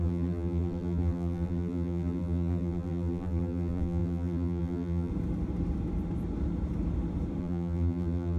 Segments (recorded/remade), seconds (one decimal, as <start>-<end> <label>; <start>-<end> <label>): 0.0-5.1 remade; 5.1-7.4 recorded; 7.4-8.4 remade